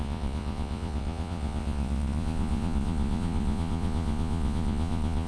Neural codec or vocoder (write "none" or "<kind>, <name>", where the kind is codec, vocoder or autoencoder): vocoder, Vocos